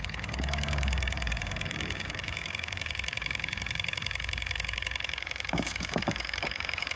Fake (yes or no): yes